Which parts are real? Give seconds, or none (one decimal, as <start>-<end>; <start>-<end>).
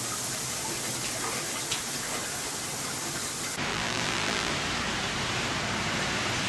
0.0-3.7; 4.5-6.5